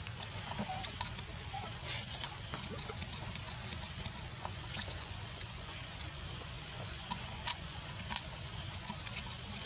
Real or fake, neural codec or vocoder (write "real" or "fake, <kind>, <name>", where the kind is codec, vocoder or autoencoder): fake, vocoder, Vocos